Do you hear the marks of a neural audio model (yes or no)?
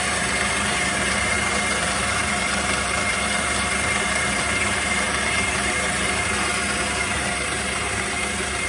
yes